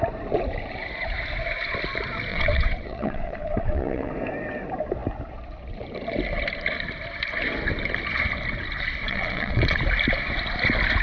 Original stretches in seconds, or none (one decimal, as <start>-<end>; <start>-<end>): 0.0-2.3; 4.1-9.0; 9.8-11.0